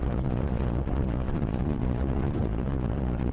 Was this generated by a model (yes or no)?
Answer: yes